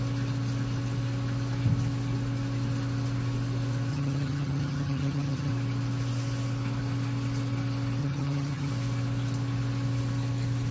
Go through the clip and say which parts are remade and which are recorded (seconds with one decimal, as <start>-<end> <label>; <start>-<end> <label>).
0.0-3.9 recorded; 3.9-5.5 remade; 5.5-8.0 recorded; 8.0-8.7 remade; 8.7-10.7 recorded